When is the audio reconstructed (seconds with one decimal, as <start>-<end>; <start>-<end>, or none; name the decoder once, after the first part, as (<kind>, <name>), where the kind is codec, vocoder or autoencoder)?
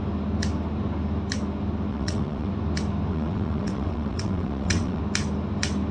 1.9-2.5 (vocoder, WaveNeXt); 3.1-5.0